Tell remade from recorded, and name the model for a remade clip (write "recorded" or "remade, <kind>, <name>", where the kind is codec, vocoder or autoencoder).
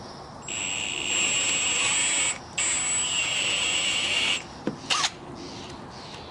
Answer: recorded